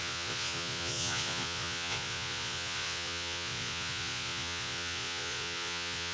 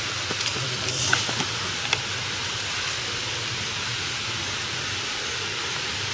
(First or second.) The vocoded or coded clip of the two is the first